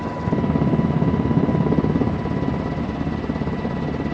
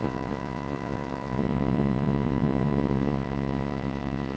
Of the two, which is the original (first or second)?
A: first